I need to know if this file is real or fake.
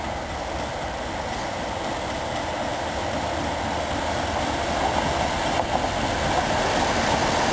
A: real